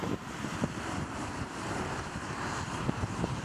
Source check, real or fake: fake